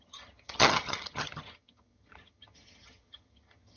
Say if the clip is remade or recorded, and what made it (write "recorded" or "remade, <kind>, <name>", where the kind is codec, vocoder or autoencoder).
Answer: remade, vocoder, HiFi-GAN